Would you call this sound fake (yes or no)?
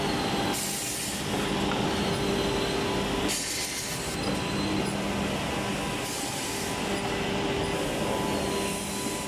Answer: no